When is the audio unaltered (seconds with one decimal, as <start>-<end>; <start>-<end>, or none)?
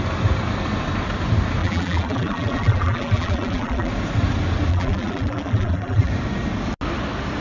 0.0-1.6; 3.9-4.7; 6.1-7.4